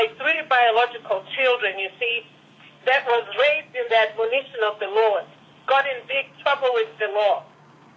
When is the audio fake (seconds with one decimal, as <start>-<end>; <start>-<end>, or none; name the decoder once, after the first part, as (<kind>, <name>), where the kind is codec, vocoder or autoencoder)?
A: 0.0-2.1 (codec, DAC); 3.6-5.3; 6.1-8.0